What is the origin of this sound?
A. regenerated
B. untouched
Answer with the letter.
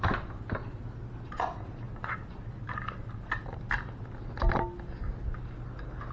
B